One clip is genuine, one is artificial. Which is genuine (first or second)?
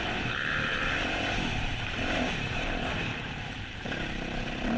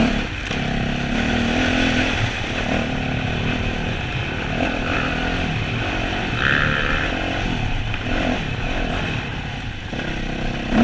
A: second